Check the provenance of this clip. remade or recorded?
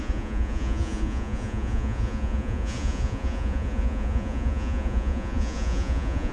remade